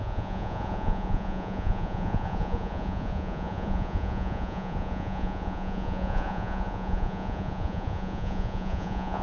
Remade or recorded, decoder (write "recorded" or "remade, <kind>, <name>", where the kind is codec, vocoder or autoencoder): remade, vocoder, Vocos